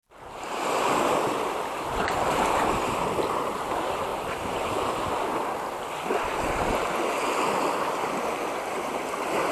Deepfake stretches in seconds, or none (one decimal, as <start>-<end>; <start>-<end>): 4.1-4.9